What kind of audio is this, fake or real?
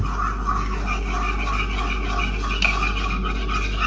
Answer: real